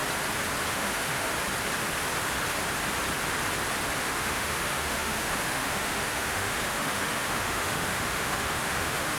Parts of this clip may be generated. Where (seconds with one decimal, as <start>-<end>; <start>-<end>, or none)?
0.7-1.3; 4.0-9.2